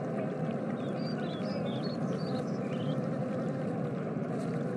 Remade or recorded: recorded